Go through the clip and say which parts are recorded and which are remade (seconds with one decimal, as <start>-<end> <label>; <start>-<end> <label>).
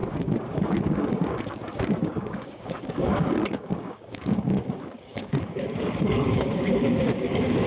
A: 0.0-7.7 remade